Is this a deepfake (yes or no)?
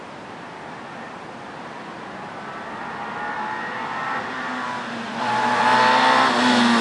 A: no